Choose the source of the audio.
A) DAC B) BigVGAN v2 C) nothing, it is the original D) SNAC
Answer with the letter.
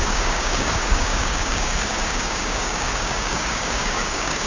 A